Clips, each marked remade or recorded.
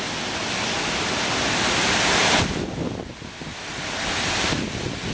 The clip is remade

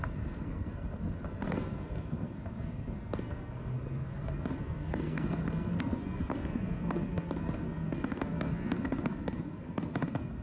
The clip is remade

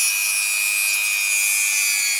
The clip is recorded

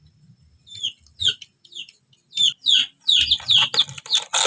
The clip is recorded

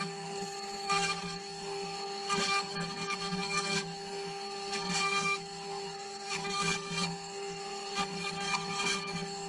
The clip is remade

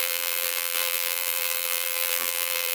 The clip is remade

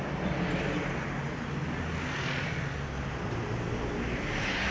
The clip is recorded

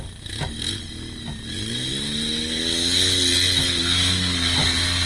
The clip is recorded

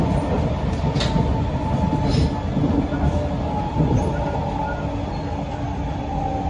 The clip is recorded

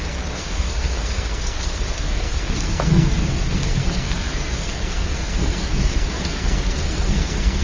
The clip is remade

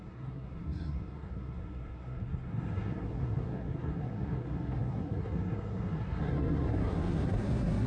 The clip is remade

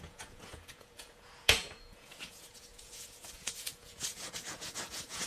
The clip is remade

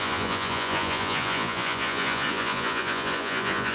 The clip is remade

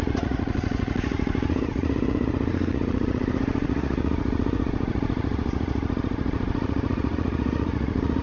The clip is remade